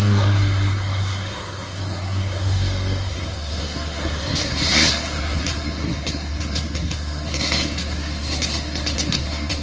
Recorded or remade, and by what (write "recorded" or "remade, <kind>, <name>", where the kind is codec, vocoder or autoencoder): remade, codec, SNAC